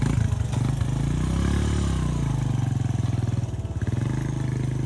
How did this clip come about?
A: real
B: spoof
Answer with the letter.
A